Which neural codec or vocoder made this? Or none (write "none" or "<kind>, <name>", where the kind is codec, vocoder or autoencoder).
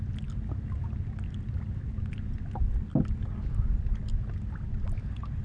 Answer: none